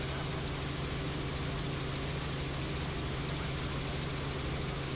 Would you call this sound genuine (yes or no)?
yes